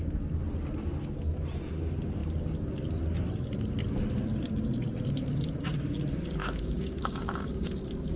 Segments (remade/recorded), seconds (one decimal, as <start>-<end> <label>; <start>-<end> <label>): 0.0-6.4 recorded; 6.4-7.7 remade; 7.7-8.2 recorded